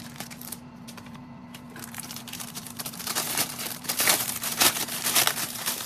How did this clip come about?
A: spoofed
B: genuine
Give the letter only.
A